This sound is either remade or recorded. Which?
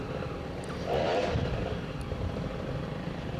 remade